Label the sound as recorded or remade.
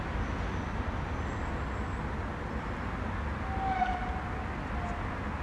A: recorded